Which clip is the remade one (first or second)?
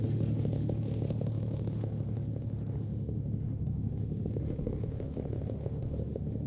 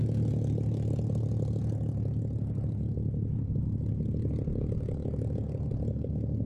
first